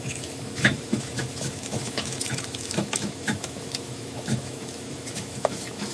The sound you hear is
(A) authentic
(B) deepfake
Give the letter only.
B